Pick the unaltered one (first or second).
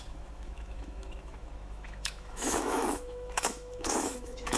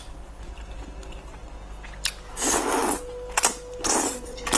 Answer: second